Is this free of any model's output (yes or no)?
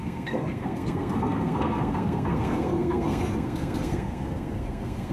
no